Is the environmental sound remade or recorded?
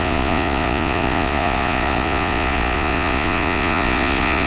remade